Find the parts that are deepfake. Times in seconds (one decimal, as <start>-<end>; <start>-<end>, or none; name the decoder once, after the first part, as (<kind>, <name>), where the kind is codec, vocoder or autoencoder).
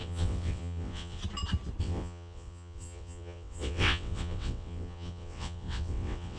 0.0-1.2 (vocoder, WaveNeXt); 1.8-6.4